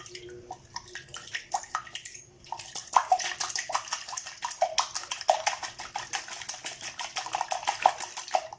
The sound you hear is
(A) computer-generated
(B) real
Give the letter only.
B